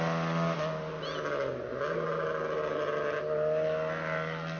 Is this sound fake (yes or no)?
no